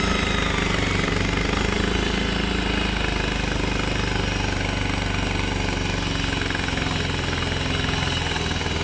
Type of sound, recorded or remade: recorded